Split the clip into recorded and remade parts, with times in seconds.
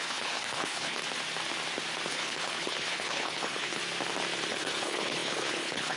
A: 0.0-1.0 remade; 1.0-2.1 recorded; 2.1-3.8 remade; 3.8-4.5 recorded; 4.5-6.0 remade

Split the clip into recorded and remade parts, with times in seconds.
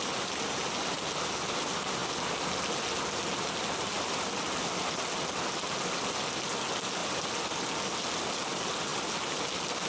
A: 0.0-9.9 recorded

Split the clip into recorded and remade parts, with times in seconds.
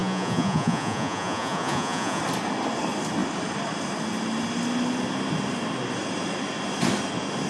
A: 0.0-2.2 remade; 2.2-7.5 recorded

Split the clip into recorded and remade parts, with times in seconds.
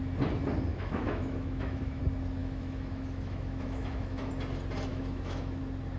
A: 0.0-0.7 recorded; 0.7-2.0 remade; 2.0-2.4 recorded; 2.4-4.3 remade; 4.3-4.9 recorded; 4.9-5.6 remade; 5.6-6.0 recorded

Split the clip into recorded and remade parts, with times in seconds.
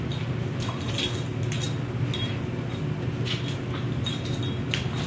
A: 0.0-5.1 recorded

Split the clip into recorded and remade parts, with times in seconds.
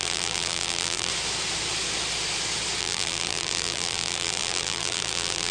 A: 0.0-1.1 remade; 1.1-2.8 recorded; 2.8-5.5 remade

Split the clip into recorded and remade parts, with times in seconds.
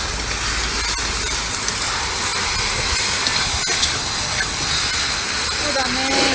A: 0.0-6.3 recorded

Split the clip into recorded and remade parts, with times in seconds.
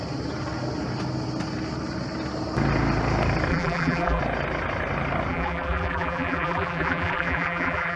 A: 0.0-3.5 recorded; 3.5-4.2 remade; 4.2-5.3 recorded; 5.3-8.0 remade